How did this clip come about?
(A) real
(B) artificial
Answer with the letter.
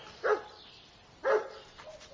B